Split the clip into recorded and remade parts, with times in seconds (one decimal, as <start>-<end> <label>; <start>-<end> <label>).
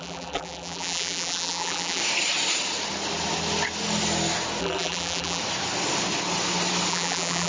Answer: 0.0-2.0 remade; 2.0-4.6 recorded; 4.6-5.4 remade; 5.4-6.9 recorded; 6.9-7.5 remade